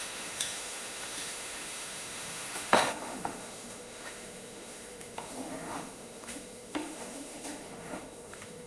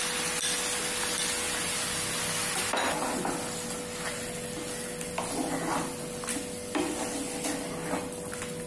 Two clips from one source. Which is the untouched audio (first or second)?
second